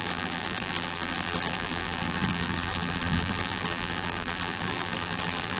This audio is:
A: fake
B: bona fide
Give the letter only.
A